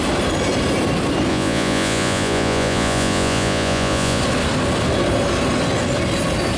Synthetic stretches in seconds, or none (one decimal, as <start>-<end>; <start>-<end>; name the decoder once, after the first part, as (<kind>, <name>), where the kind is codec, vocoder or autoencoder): 1.3-4.2 (vocoder, Vocos)